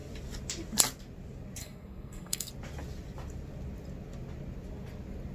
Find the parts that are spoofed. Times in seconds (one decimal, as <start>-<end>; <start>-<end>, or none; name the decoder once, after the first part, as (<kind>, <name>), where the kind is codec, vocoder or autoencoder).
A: 1.6-2.5 (codec, SNAC)